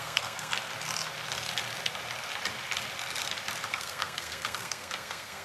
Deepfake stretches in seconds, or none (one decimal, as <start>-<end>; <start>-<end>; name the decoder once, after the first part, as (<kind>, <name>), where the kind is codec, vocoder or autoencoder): 0.0-0.5 (codec, SNAC); 3.7-5.4